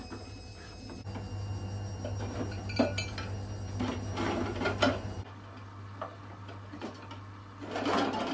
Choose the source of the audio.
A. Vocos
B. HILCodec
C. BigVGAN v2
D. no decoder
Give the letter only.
D